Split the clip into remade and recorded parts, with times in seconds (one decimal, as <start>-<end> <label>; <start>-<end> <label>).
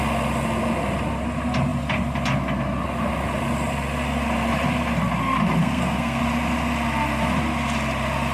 0.0-5.6 recorded; 5.6-6.2 remade; 6.2-8.3 recorded